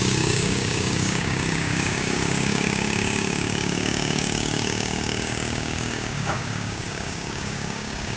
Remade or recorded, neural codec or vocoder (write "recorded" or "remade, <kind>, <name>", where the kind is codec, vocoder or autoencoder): remade, codec, DAC